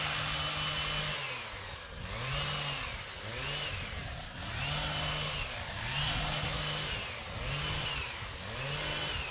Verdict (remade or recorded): recorded